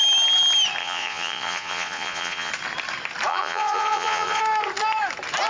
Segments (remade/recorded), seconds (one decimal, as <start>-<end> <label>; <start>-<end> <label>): 0.0-0.8 recorded; 0.8-2.5 remade; 2.5-3.3 recorded; 3.3-4.4 remade; 4.4-5.5 recorded